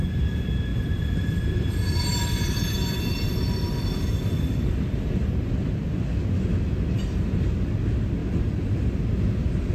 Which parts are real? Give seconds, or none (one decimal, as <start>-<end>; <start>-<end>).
0.0-0.7; 5.5-9.7